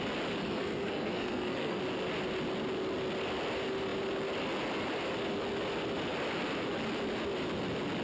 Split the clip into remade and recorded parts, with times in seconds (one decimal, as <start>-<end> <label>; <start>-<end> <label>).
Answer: 0.0-0.4 recorded; 0.4-1.8 remade; 1.8-8.0 recorded